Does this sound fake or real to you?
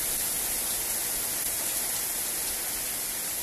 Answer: real